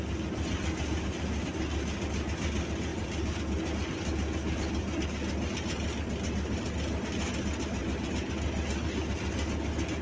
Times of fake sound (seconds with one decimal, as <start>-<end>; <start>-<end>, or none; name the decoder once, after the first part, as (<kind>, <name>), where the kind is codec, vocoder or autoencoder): 2.9-3.4 (vocoder, BigVGAN v2); 7.8-8.3